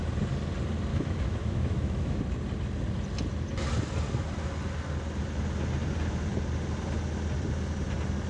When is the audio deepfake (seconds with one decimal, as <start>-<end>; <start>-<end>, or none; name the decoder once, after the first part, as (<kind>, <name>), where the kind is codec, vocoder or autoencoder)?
0.9-2.2 (autoencoder, DAC-VAE)